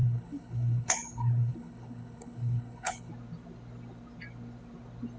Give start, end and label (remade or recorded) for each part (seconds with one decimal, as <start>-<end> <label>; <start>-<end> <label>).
0.0-3.1 remade; 3.1-5.2 recorded